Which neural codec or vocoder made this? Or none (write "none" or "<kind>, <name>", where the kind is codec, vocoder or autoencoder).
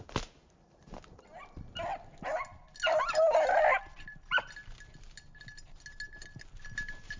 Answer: none